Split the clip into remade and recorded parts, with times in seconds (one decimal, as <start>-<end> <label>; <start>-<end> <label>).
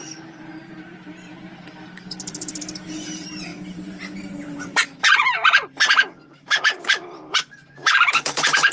0.0-8.7 remade